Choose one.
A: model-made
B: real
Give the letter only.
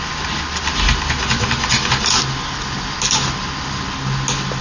B